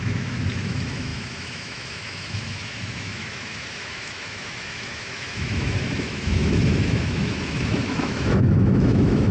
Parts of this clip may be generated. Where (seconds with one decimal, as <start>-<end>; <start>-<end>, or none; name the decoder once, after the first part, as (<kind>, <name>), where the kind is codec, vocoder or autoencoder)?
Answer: 0.0-9.3 (autoencoder, DAC-VAE)